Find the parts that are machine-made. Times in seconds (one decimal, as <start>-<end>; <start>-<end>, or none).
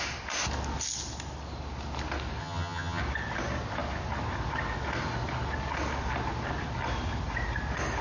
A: 2.4-3.0